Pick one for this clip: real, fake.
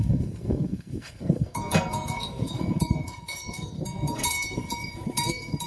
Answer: fake